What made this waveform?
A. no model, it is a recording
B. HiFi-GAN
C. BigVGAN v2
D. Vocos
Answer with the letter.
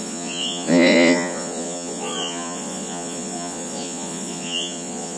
D